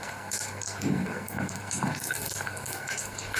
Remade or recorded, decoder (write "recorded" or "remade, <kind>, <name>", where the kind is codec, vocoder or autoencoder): remade, codec, SNAC